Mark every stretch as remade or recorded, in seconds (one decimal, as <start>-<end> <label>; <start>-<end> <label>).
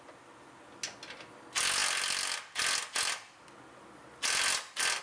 0.0-5.0 recorded